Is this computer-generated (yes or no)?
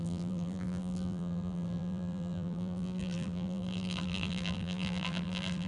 yes